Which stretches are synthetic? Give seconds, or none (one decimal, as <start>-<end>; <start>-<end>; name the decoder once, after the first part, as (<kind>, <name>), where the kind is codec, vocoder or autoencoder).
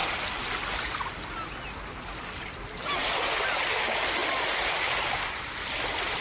none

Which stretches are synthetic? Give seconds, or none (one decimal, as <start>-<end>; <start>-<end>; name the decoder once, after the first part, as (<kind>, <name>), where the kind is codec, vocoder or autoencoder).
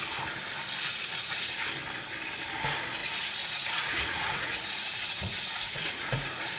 0.9-1.5 (vocoder, Vocos); 3.0-6.6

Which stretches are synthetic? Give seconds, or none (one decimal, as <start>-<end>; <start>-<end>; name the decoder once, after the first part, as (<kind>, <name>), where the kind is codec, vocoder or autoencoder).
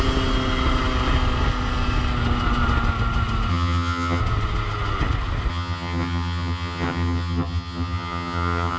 3.5-4.2 (vocoder, HiFi-GAN); 5.5-8.8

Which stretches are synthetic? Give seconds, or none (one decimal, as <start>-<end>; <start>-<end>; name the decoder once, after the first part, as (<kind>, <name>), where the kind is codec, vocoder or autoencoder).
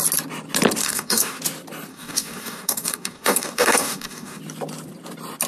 0.8-1.4 (codec, DAC); 1.9-4.4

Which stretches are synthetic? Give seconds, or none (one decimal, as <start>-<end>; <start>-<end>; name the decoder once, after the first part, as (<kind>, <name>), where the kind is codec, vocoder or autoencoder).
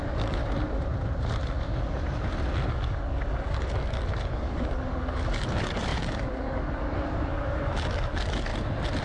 0.0-0.4 (codec, DAC); 2.7-8.5